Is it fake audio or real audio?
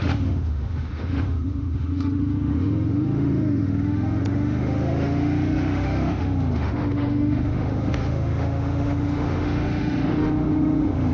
fake